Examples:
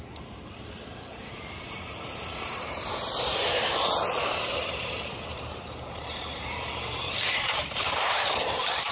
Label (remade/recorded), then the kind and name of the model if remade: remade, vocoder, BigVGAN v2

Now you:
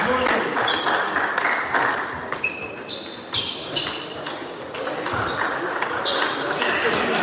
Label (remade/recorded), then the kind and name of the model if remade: recorded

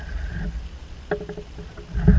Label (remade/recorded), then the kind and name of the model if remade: recorded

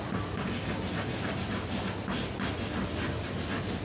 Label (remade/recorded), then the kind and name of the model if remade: recorded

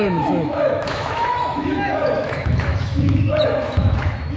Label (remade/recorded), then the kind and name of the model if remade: remade, autoencoder, DAC-VAE